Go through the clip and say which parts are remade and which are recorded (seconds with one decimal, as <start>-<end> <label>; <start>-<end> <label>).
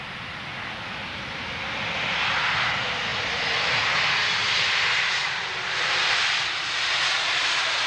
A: 0.0-5.2 recorded; 5.2-6.6 remade; 6.6-7.9 recorded